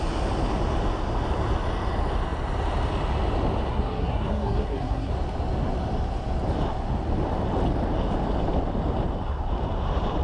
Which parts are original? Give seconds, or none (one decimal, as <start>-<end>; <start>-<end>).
0.0-3.7; 5.1-10.2